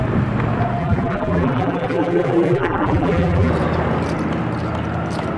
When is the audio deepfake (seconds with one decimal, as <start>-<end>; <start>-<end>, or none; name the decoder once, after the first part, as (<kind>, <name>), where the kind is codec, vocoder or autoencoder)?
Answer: 0.8-3.5 (vocoder, BigVGAN v2)